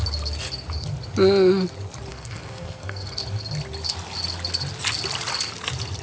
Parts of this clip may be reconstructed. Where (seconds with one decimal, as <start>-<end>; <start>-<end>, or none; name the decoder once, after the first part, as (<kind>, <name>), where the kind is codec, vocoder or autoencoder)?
2.1-3.2 (codec, SNAC)